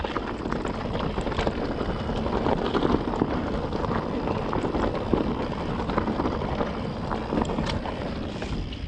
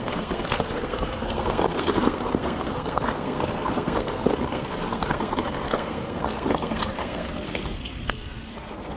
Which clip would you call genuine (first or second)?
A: first